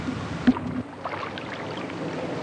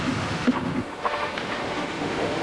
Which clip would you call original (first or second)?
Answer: first